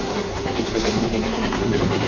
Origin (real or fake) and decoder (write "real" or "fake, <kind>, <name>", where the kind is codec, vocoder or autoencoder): fake, codec, SNAC